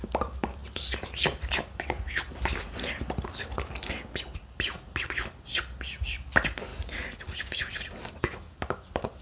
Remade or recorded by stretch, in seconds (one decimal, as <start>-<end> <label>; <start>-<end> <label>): 0.0-9.2 recorded